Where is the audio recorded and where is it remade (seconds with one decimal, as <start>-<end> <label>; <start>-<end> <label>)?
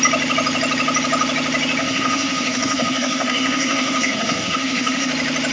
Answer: 0.0-1.8 recorded; 1.8-5.1 remade; 5.1-5.5 recorded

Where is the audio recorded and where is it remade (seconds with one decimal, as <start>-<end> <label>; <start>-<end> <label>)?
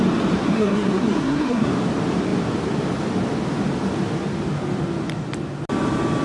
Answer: 0.0-0.4 recorded; 0.4-1.7 remade; 1.7-6.2 recorded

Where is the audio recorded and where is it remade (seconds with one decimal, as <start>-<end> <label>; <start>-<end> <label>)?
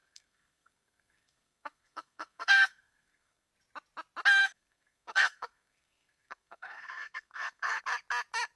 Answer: 0.0-3.5 remade; 3.5-4.4 recorded; 4.4-7.8 remade; 7.8-8.6 recorded